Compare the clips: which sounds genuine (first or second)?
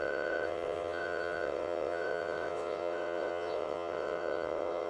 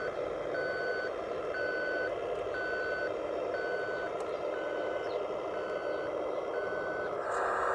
second